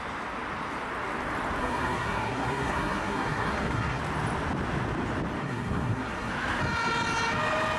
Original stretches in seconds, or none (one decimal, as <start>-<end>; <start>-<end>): 0.0-1.6; 4.0-5.4; 6.3-7.8